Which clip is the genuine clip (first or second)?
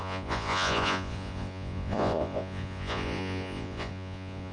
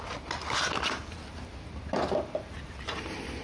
second